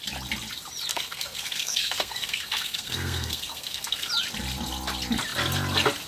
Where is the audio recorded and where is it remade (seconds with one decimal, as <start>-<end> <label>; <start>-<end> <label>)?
0.0-0.9 recorded; 0.9-4.1 remade; 4.1-6.1 recorded